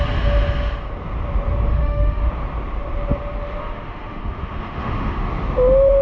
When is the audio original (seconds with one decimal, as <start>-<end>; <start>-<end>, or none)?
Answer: 0.0-1.7; 2.3-3.6; 5.3-6.0